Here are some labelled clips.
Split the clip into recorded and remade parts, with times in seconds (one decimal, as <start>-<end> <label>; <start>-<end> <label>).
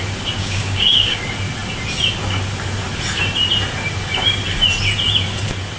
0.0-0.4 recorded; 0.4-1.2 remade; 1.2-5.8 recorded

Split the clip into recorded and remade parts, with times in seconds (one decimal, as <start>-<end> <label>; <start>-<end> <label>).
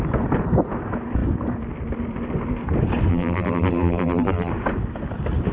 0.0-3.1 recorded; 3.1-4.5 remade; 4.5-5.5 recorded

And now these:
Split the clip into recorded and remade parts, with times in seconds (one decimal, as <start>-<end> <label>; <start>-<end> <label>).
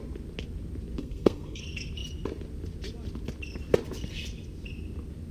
0.0-1.0 recorded; 1.0-1.6 remade; 1.6-5.3 recorded